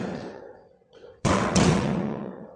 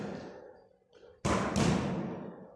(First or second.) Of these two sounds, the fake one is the first